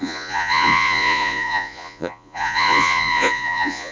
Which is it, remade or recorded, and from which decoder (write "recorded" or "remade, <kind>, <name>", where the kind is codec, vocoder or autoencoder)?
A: remade, vocoder, Vocos